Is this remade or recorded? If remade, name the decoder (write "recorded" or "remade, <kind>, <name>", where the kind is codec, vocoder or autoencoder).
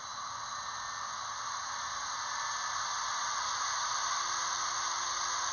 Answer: recorded